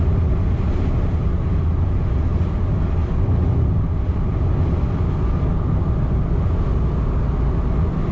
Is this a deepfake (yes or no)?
no